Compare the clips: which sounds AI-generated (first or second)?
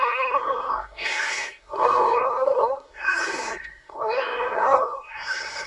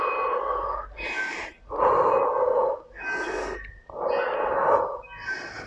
first